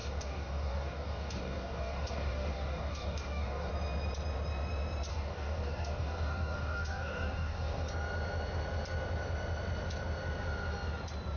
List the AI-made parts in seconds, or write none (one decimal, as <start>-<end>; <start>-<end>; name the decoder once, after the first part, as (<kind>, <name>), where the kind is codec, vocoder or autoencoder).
0.0-3.7 (codec, DAC); 5.1-7.9